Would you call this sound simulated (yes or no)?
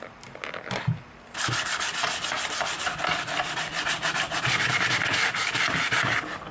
no